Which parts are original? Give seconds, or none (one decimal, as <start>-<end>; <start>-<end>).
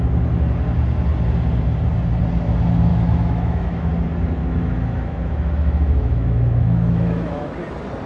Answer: 0.0-2.9; 3.9-4.4; 7.5-8.1